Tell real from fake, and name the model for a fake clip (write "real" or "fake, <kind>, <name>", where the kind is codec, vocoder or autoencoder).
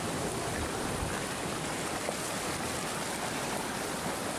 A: real